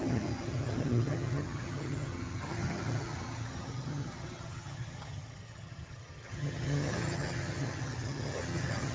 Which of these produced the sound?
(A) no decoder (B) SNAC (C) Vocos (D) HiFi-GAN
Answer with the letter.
D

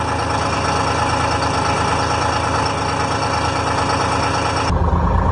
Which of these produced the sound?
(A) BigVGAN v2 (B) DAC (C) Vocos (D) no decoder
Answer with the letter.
D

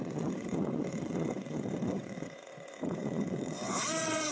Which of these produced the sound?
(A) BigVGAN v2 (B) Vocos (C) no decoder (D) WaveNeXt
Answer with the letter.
D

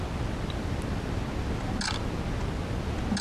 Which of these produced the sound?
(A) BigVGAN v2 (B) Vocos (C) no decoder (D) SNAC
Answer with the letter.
C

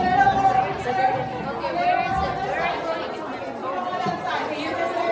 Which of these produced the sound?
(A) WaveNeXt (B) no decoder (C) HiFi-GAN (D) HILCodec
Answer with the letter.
B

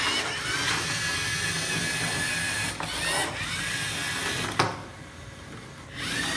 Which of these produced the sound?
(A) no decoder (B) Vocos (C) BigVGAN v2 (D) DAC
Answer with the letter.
A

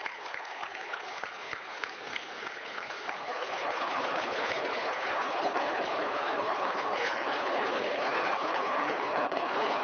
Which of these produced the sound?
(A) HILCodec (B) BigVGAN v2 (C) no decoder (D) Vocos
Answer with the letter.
A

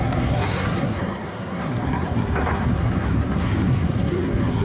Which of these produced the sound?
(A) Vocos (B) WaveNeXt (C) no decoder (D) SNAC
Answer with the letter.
D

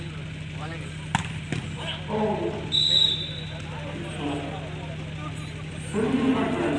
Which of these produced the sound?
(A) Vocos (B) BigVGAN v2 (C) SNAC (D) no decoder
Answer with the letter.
D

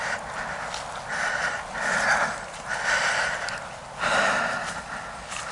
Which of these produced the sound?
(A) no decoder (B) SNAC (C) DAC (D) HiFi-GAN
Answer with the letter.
A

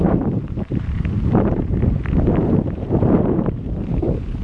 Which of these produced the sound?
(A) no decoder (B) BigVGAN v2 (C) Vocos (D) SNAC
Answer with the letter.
B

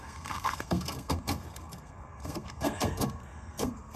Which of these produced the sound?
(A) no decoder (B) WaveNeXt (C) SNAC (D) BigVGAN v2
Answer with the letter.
C